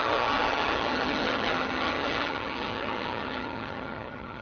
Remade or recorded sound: remade